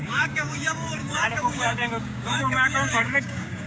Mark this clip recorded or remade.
remade